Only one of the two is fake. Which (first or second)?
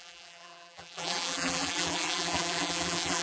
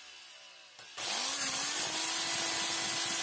first